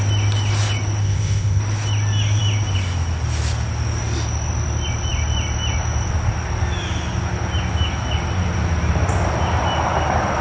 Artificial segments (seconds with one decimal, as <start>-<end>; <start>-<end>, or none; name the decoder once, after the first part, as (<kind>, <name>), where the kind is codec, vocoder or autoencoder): 1.0-1.6 (codec, ZipCodec)